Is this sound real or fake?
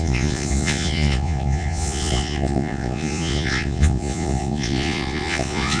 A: fake